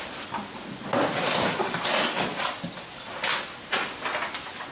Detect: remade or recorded recorded